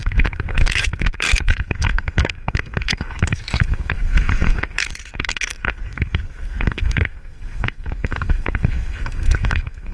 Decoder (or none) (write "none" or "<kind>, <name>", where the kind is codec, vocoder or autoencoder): codec, SNAC